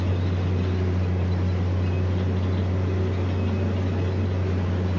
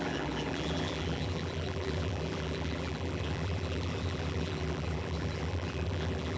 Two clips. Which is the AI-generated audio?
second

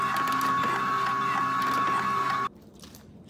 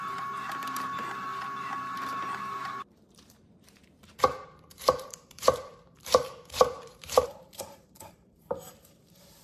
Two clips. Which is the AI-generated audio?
second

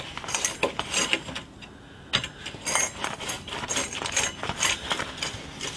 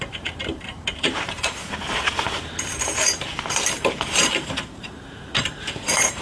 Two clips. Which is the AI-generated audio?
second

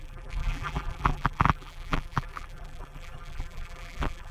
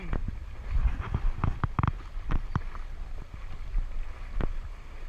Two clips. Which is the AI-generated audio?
first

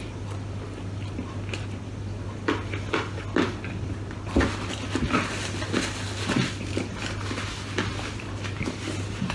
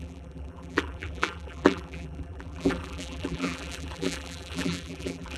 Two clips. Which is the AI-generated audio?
second